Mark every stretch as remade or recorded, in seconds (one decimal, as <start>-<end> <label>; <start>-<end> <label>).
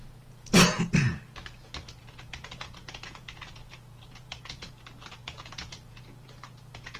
0.0-0.9 remade; 0.9-2.0 recorded; 2.0-4.7 remade; 4.7-5.2 recorded; 5.2-7.0 remade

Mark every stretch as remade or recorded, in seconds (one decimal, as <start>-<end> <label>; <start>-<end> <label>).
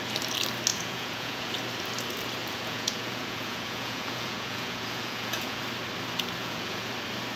0.0-0.7 recorded; 0.7-1.5 remade; 1.5-2.4 recorded; 2.4-5.6 remade; 5.6-6.4 recorded; 6.4-6.9 remade; 6.9-7.4 recorded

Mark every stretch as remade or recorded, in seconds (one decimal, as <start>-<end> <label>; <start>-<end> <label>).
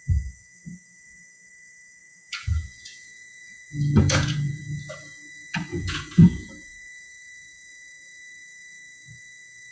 0.0-2.0 recorded; 2.0-4.6 remade; 4.6-5.7 recorded; 5.7-6.5 remade; 6.5-9.7 recorded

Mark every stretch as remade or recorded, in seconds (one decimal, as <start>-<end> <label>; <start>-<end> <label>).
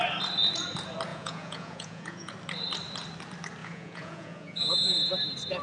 0.0-1.1 recorded; 1.1-2.3 remade; 2.3-3.6 recorded; 3.6-5.1 remade; 5.1-5.6 recorded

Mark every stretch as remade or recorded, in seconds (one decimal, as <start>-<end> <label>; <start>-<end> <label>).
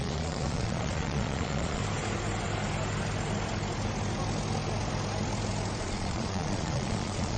0.0-1.8 remade; 1.8-5.8 recorded; 5.8-7.4 remade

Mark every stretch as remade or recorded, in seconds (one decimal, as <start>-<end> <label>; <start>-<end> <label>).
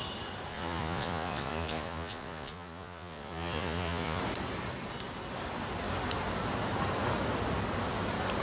0.0-0.5 recorded; 0.5-4.2 remade; 4.2-8.4 recorded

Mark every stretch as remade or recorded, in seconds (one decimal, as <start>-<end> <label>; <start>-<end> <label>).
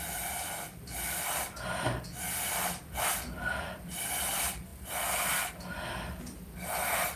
0.0-7.2 recorded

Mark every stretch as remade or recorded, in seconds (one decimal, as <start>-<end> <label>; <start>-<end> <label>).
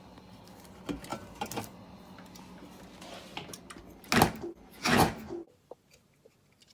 0.0-6.7 recorded